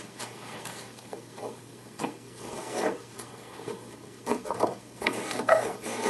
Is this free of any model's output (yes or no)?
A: no